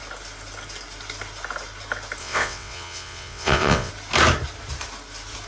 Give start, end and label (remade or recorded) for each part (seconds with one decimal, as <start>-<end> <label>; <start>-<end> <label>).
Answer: 0.0-2.2 recorded; 2.2-3.9 remade; 3.9-5.5 recorded